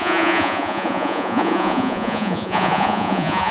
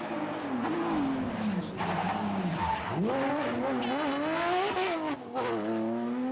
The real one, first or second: second